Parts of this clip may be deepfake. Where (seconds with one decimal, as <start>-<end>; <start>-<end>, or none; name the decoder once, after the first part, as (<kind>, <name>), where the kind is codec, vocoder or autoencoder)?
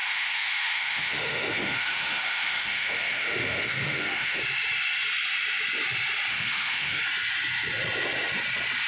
0.0-4.4 (autoencoder, DAC-VAE); 6.3-7.0